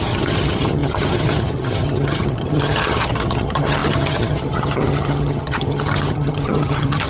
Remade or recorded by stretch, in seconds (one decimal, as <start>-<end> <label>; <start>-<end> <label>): 0.0-7.1 remade